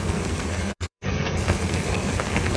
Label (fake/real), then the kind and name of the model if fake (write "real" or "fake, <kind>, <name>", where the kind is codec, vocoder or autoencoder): fake, codec, SNAC